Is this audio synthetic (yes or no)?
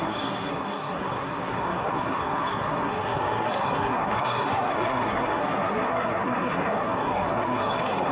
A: yes